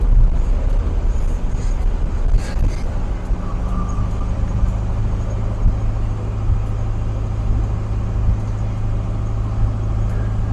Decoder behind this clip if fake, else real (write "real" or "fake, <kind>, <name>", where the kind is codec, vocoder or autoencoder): real